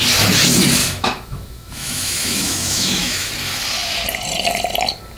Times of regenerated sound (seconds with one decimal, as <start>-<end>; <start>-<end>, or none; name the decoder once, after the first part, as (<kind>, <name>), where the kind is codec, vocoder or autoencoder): 0.8-3.3 (autoencoder, DAC-VAE)

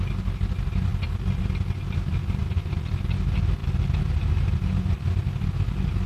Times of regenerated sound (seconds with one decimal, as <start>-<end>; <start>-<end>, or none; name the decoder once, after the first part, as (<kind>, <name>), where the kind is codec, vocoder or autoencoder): none

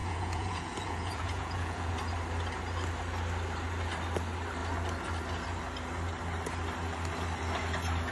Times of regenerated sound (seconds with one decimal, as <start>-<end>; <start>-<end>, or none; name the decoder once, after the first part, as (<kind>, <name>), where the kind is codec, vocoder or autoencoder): 0.0-1.9 (vocoder, Vocos)

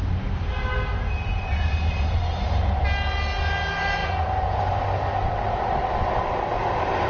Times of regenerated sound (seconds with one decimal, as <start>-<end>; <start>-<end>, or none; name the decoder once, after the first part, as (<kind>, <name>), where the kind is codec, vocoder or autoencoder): 4.0-4.6 (vocoder, Vocos)

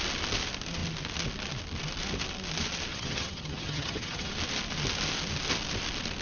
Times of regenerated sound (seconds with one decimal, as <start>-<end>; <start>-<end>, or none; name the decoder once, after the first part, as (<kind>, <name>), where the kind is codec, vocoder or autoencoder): 2.9-4.3 (vocoder, HiFi-GAN)

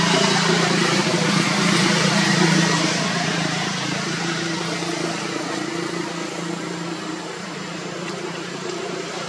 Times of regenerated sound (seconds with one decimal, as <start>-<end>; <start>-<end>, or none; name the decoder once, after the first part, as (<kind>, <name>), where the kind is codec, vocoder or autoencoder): 0.0-4.6 (vocoder, BigVGAN v2); 7.4-9.3